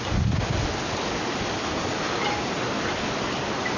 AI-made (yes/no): no